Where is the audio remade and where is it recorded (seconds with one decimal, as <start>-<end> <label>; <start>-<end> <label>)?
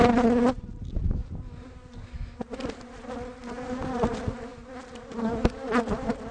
0.0-6.3 recorded